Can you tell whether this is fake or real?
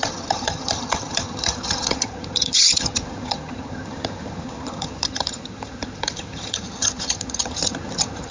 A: fake